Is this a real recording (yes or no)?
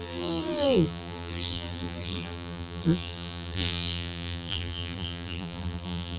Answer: no